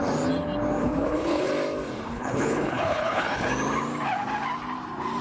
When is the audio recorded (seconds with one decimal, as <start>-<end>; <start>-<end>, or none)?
0.0-0.8; 1.5-2.1; 3.5-5.2